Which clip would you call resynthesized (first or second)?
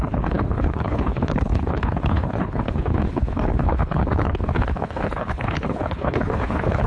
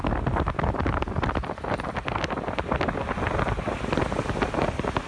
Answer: first